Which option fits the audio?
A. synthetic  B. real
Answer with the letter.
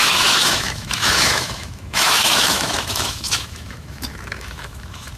A